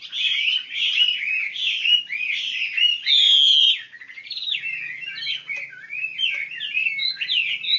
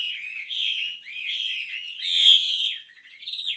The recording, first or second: first